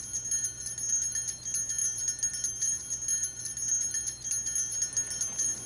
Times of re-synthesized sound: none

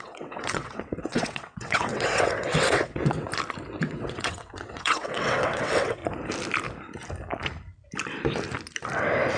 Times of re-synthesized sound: 0.0-3.3 (vocoder, WaveNeXt); 3.8-6.0

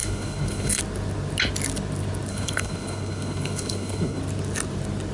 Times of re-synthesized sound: 0.0-0.8 (codec, HILCodec); 2.3-4.2

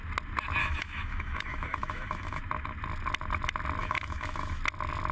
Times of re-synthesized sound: 0.6-2.4 (autoencoder, DAC-VAE); 3.8-4.6

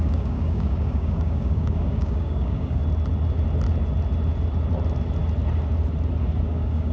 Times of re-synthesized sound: 0.0-2.8 (codec, DAC); 6.4-6.9

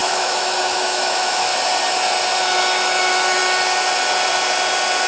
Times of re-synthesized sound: 0.0-1.5 (autoencoder, DAC-VAE); 2.4-3.4

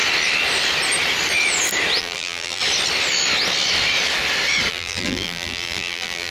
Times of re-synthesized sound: 2.0-2.6 (vocoder, BigVGAN v2); 4.7-6.3

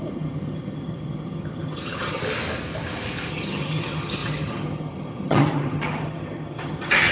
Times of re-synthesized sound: 0.0-2.2 (vocoder, HiFi-GAN); 3.3-7.1